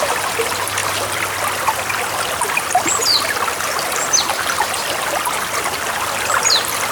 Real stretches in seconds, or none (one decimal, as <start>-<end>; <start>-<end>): 0.0-6.9